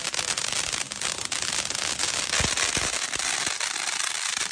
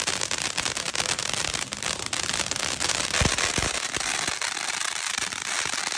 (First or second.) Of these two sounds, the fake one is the second